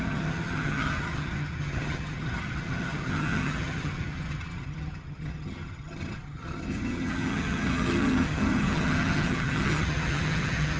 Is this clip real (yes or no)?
no